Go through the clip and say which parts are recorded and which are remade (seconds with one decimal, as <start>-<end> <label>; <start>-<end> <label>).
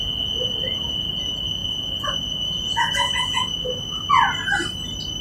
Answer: 0.0-4.2 remade; 4.2-5.2 recorded